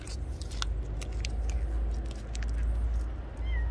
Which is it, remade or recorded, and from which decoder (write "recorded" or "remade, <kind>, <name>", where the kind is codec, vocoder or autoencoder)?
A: recorded